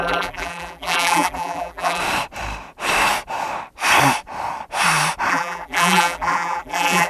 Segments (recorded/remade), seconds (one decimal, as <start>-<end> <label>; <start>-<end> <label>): 0.0-2.0 remade; 2.0-5.3 recorded; 5.3-7.1 remade